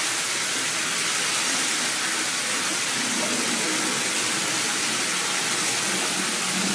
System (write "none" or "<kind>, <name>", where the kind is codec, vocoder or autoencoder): none